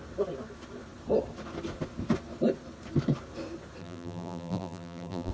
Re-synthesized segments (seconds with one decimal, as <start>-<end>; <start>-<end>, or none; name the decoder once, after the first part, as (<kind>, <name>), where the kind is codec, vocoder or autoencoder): 3.8-5.3 (vocoder, BigVGAN v2)